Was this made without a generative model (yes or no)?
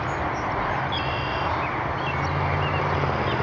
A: yes